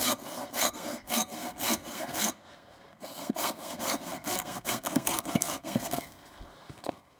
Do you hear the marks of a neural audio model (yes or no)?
yes